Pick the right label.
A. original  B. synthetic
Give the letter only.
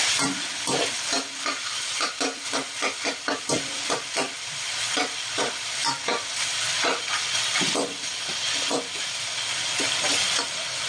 A